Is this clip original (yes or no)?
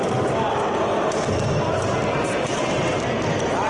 yes